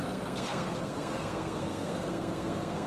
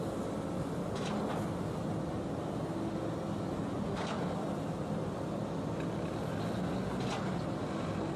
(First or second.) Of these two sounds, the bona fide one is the second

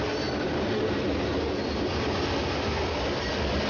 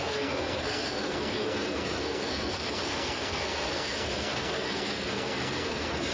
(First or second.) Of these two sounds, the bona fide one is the first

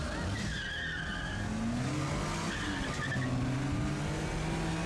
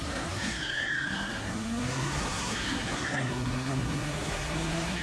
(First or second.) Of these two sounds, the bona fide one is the first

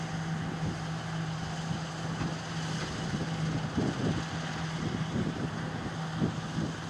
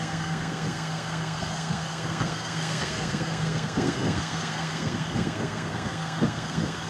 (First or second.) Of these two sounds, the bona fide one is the first